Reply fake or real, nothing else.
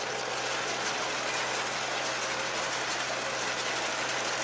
real